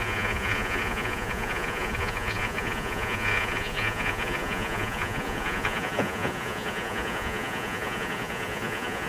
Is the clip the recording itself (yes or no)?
no